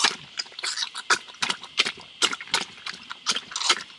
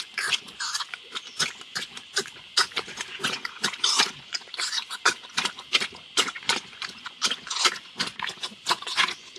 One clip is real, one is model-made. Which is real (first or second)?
first